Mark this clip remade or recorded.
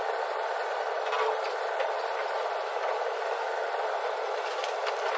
recorded